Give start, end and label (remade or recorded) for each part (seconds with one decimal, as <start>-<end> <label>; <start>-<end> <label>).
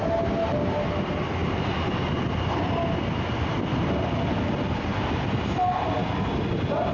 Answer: 0.0-6.9 recorded